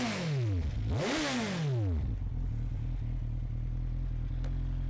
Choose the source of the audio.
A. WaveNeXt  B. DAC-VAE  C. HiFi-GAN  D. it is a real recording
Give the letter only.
D